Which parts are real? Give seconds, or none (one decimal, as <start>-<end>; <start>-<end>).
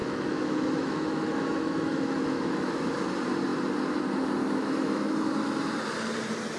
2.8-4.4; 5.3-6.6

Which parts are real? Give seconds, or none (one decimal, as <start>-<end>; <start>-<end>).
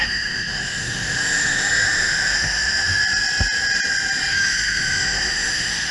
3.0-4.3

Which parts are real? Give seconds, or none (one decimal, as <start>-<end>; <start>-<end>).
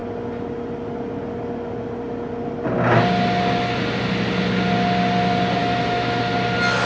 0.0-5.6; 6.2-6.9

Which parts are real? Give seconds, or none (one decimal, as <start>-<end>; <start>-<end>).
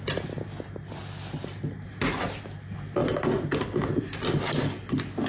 0.0-5.3